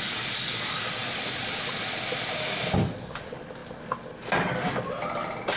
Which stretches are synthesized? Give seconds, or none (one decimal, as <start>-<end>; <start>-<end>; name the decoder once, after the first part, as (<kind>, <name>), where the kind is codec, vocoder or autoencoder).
none